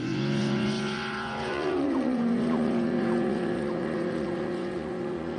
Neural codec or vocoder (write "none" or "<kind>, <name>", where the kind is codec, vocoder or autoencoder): vocoder, Vocos